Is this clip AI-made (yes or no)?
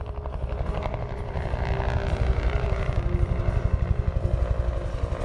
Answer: no